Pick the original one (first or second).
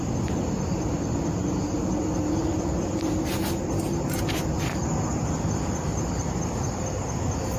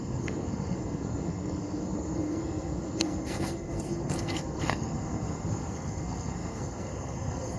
first